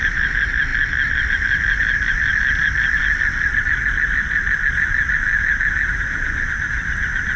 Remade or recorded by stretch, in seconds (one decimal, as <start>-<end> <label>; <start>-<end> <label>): 0.0-0.7 remade; 0.7-1.3 recorded; 1.3-3.0 remade; 3.0-3.6 recorded; 3.6-7.4 remade